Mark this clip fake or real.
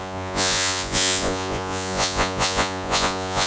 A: fake